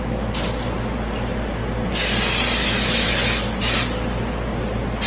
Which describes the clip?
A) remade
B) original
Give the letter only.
B